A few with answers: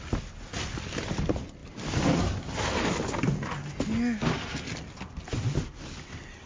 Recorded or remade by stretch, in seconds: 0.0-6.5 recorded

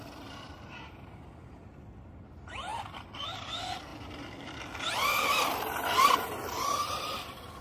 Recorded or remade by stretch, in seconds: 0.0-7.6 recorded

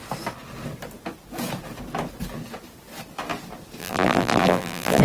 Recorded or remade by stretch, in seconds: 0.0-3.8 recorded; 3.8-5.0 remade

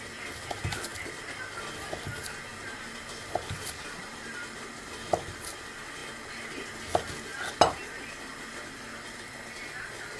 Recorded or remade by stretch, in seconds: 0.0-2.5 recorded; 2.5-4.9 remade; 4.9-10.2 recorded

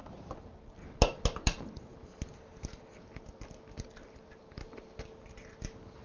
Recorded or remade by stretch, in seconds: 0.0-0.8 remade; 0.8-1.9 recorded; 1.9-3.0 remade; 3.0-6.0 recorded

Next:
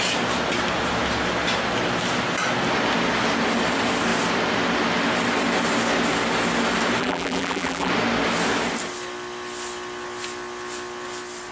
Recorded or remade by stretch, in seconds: 0.0-7.0 recorded; 7.0-7.9 remade; 7.9-11.5 recorded

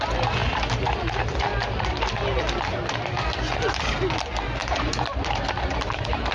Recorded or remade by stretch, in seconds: 0.0-4.6 recorded; 4.6-6.3 remade

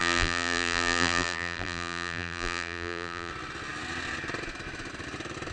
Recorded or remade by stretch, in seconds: 0.0-3.3 remade; 3.3-5.5 recorded